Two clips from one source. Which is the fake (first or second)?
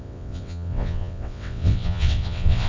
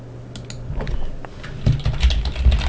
first